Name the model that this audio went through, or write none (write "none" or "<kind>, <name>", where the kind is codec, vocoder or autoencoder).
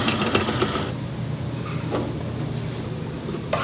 none